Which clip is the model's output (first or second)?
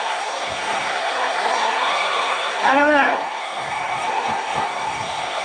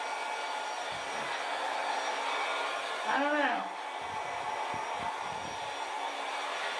first